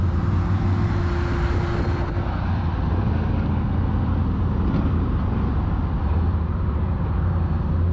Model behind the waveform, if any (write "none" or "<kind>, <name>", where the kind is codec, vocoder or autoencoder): none